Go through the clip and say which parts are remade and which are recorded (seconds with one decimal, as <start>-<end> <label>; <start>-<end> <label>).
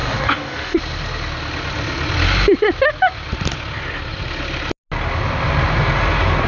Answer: 0.0-0.8 remade; 0.8-6.5 recorded